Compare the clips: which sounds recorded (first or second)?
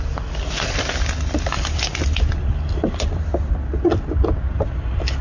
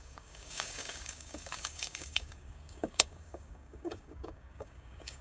first